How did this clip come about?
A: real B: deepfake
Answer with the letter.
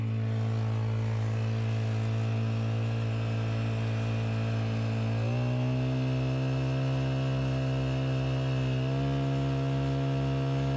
A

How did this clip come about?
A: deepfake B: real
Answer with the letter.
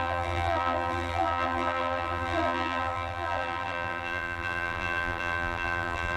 A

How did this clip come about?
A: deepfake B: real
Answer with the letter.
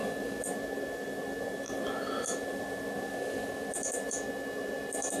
B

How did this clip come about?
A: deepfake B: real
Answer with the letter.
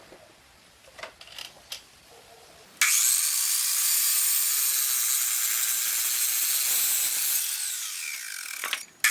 B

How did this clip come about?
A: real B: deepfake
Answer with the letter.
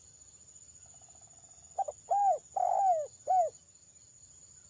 A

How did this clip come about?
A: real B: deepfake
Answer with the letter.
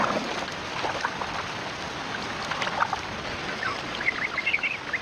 A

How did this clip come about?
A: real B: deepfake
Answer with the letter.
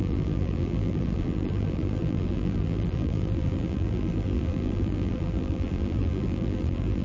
B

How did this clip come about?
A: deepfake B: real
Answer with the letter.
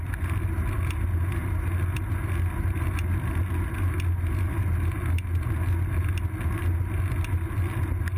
B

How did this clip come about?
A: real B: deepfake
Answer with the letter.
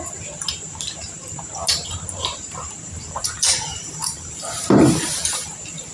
B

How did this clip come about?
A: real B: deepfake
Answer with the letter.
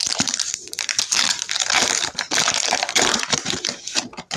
B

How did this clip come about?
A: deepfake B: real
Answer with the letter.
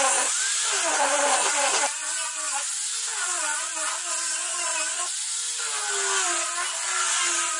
B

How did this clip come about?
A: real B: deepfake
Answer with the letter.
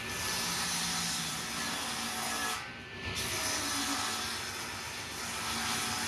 A